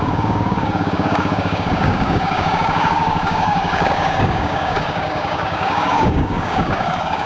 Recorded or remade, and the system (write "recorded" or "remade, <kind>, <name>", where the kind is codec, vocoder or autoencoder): remade, codec, DAC